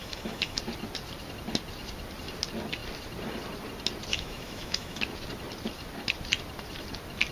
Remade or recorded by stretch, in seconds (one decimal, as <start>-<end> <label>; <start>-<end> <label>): 0.0-0.6 remade; 0.6-4.1 recorded; 4.1-5.0 remade; 5.0-7.3 recorded